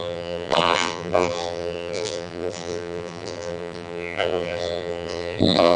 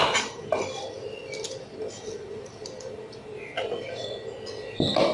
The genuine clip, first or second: second